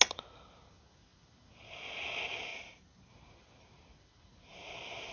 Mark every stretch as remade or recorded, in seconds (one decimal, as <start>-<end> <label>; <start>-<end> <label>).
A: 0.0-2.5 recorded; 2.5-3.1 remade; 3.1-5.1 recorded